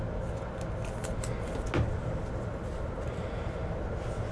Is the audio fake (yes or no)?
no